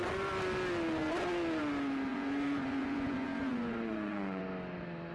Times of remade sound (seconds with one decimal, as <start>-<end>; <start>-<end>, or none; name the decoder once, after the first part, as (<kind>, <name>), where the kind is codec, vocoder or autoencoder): 2.1-4.4 (vocoder, Vocos)